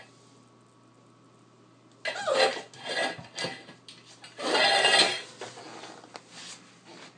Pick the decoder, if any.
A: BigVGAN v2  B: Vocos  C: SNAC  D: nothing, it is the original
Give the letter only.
D